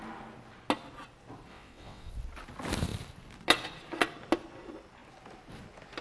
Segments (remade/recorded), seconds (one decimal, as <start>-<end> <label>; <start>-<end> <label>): 0.0-1.5 recorded; 1.5-2.1 remade; 2.1-6.0 recorded